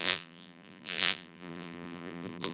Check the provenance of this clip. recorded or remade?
remade